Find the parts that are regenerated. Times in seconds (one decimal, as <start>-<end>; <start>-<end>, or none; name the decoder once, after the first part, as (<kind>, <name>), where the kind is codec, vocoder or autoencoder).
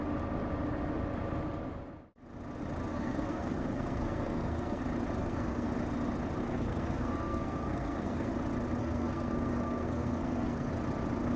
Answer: 2.9-4.8 (codec, SNAC); 5.2-5.7; 6.4-8.3; 8.8-10.7